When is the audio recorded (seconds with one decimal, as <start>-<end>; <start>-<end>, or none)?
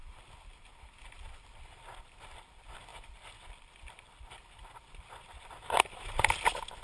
0.0-6.8